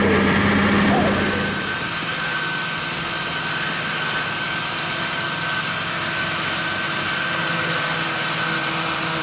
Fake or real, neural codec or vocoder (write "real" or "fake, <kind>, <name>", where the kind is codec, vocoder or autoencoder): real